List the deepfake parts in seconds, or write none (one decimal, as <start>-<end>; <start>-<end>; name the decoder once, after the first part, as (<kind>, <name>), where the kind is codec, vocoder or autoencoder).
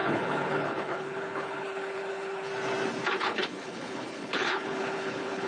0.0-2.5 (codec, HILCodec); 3.2-5.5